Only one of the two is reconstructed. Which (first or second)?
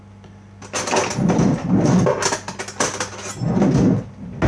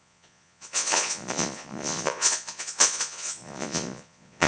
second